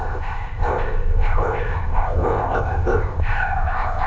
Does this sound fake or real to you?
fake